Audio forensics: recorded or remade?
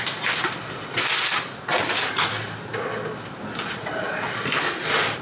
recorded